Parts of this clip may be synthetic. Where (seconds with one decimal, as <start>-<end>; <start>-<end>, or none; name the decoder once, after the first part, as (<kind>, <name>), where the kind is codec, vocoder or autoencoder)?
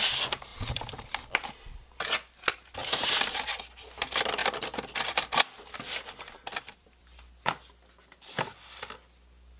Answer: 0.5-1.5 (vocoder, BigVGAN v2); 2.8-3.6; 4.4-8.8